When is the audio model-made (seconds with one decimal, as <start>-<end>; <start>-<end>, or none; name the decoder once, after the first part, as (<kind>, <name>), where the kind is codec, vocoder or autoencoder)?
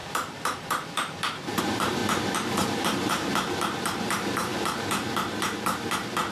0.0-2.0 (vocoder, BigVGAN v2); 2.5-6.3